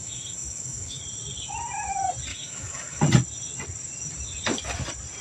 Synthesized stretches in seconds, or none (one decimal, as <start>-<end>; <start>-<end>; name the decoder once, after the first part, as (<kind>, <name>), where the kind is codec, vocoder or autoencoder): 0.0-1.0 (autoencoder, DAC-VAE); 2.3-3.0